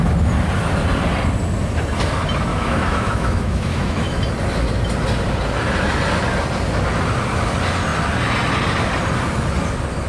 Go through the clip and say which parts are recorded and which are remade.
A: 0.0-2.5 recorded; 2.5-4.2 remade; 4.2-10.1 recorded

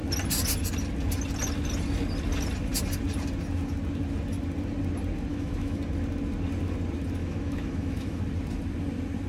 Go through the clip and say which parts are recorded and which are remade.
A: 0.0-5.3 recorded; 5.3-5.8 remade; 5.8-7.2 recorded; 7.2-8.2 remade; 8.2-9.3 recorded